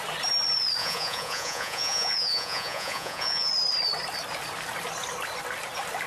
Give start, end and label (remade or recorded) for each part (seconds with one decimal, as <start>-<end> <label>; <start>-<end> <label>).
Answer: 0.0-0.8 recorded; 0.8-3.5 remade; 3.5-6.1 recorded